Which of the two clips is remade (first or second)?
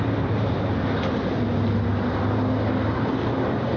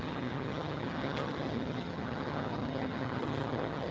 second